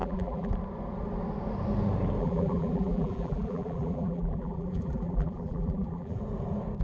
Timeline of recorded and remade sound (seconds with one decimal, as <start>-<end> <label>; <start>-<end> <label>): 0.0-0.5 remade; 0.5-2.2 recorded; 2.2-6.2 remade; 6.2-6.8 recorded